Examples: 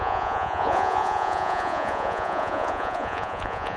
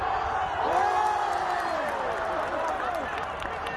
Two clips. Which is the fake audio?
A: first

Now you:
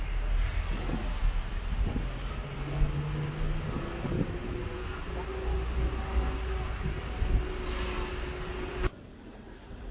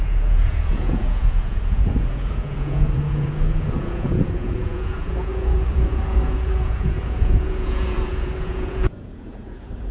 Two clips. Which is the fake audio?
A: second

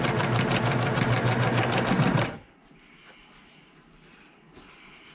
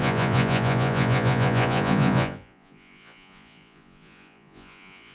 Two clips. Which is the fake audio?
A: second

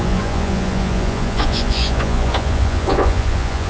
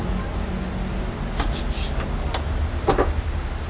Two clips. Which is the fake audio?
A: first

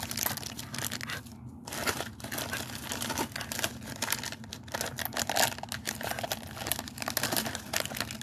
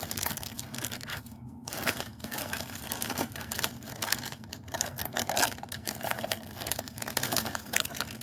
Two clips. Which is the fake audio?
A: second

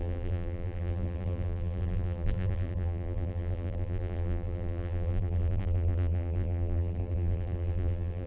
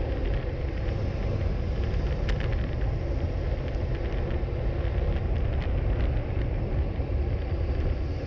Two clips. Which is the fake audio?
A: first